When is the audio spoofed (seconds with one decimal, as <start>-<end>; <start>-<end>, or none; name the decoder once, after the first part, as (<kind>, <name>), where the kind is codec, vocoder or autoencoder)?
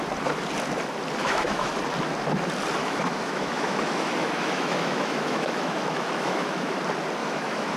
1.2-1.7 (autoencoder, DAC-VAE); 2.8-6.8; 7.2-7.8